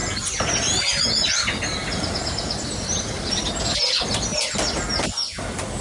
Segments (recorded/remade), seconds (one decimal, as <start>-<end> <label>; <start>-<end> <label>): 0.0-5.8 recorded